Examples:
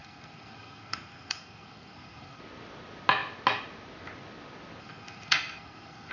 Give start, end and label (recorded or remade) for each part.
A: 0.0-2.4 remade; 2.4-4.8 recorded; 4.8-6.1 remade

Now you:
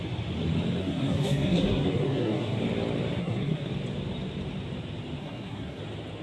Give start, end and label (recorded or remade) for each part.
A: 0.0-0.8 recorded; 0.8-2.6 remade; 2.6-3.2 recorded; 3.2-3.7 remade; 3.7-5.2 recorded; 5.2-5.8 remade; 5.8-6.2 recorded

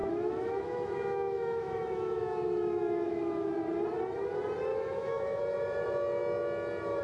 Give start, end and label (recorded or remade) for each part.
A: 0.0-3.5 remade; 3.5-4.7 recorded; 4.7-5.4 remade; 5.4-7.0 recorded

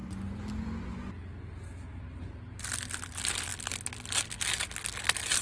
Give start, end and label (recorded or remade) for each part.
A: 0.0-5.4 recorded